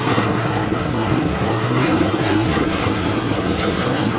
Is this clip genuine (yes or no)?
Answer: no